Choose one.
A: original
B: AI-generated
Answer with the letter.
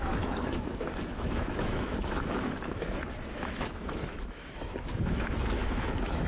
B